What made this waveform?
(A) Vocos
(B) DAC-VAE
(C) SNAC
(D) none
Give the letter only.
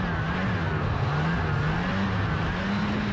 D